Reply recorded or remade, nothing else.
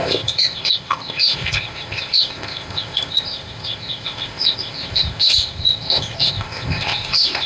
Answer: remade